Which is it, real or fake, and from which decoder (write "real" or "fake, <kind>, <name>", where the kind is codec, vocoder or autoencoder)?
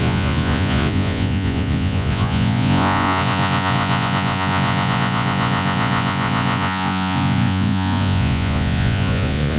fake, vocoder, Vocos